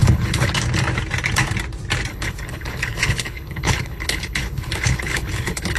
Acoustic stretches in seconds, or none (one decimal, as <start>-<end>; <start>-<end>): 0.5-2.1

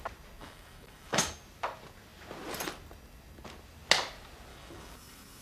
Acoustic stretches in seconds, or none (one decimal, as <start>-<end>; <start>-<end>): 0.0-0.4; 1.2-4.5

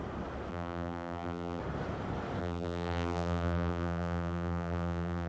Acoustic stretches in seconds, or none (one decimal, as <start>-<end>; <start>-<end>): 0.0-0.5; 1.6-2.4

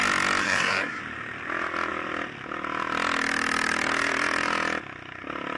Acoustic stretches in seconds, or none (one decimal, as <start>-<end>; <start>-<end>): 0.0-0.4; 1.0-5.6

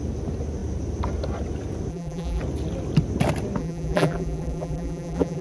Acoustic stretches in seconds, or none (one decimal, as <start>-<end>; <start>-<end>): 0.0-1.9; 2.4-3.6